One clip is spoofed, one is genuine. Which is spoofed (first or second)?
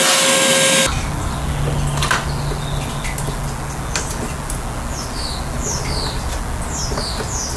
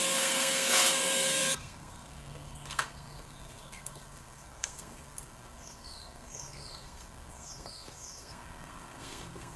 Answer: second